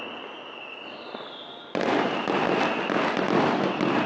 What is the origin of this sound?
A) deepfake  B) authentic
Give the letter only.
B